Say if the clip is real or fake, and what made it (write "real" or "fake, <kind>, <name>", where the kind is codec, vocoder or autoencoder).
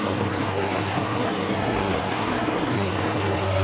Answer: fake, codec, SNAC